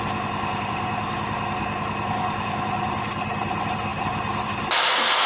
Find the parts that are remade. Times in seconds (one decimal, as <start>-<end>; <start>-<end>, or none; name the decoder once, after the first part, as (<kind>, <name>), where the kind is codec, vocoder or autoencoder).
none